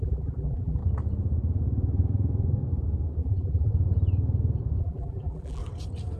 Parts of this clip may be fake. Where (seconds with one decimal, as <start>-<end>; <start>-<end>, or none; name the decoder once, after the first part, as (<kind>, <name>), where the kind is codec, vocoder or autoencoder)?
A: 0.0-0.8 (vocoder, BigVGAN v2); 3.2-3.7; 4.8-5.6